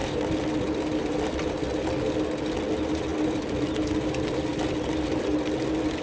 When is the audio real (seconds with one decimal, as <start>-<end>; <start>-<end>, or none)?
0.0-6.0